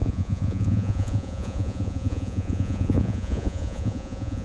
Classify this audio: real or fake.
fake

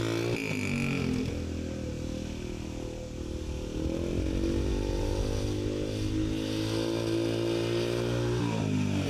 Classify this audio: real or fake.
real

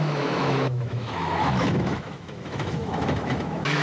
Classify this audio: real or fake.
fake